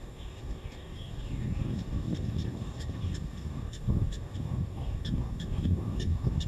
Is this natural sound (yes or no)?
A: no